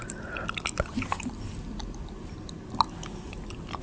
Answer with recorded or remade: recorded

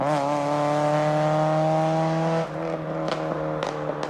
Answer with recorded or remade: recorded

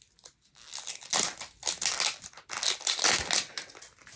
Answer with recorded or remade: recorded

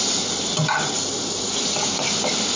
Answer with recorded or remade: recorded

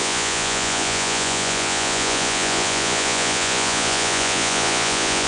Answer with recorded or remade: remade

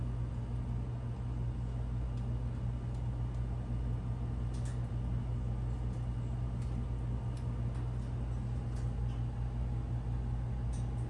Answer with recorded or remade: recorded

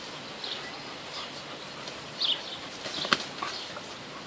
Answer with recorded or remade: recorded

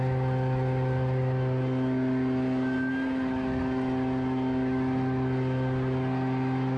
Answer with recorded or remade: recorded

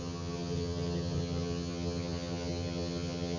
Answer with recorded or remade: remade